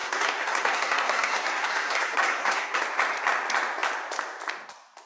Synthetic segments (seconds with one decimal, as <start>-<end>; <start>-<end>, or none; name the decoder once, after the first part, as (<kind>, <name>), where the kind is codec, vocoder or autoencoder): 0.0-2.8 (codec, SNAC)